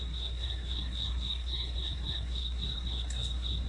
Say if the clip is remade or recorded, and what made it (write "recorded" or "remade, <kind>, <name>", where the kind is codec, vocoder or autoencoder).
remade, codec, SNAC